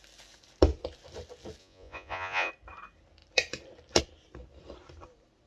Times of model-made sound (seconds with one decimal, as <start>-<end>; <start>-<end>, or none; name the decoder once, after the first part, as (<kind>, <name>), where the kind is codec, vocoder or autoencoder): 1.6-2.5 (vocoder, Vocos)